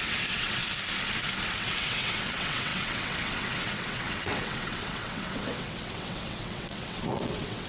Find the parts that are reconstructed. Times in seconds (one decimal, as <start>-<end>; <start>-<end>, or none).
0.0-0.6; 1.4-7.7